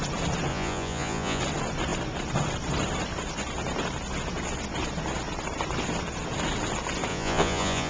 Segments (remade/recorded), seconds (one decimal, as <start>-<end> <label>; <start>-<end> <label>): 0.0-0.5 recorded; 0.5-1.4 remade; 1.4-7.1 recorded; 7.1-7.9 remade